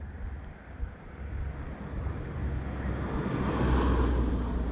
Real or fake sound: real